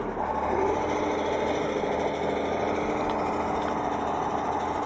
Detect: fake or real real